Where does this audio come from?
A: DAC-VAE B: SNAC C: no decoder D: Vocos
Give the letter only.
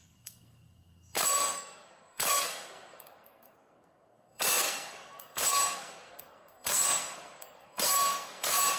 B